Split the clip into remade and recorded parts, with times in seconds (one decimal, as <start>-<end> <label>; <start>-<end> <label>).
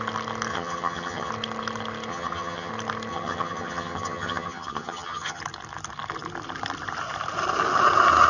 0.0-0.5 recorded; 0.5-1.3 remade; 1.3-2.1 recorded; 2.1-2.7 remade; 2.7-3.1 recorded; 3.1-5.4 remade; 5.4-8.3 recorded